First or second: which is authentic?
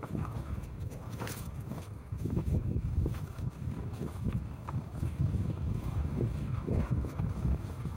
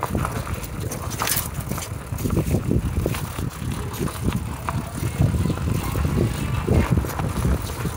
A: second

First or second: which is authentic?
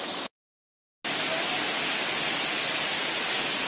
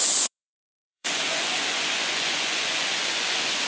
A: first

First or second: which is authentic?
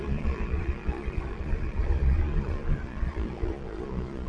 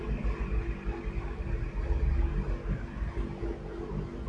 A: second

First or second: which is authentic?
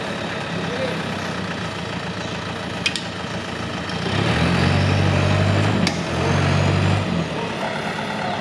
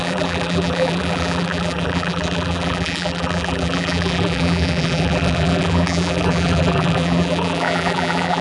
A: first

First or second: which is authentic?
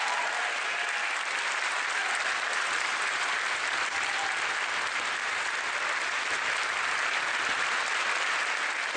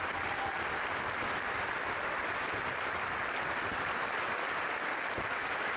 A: first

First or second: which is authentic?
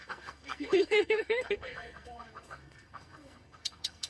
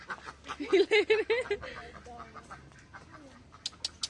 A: second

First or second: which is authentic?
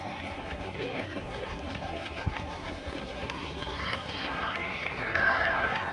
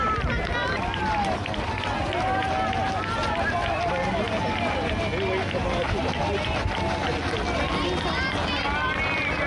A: second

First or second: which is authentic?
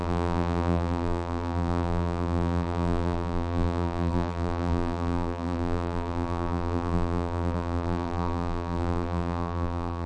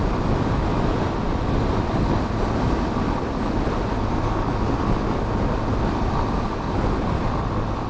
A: second